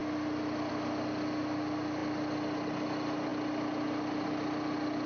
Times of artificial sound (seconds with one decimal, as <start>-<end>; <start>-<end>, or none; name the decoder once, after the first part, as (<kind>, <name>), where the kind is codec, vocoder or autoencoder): none